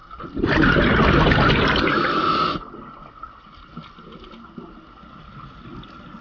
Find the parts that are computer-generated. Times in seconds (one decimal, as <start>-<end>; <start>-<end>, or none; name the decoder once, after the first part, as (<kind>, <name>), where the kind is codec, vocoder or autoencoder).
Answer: none